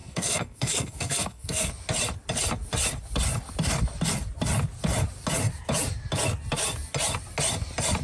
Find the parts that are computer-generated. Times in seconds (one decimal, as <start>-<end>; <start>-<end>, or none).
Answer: 0.0-1.7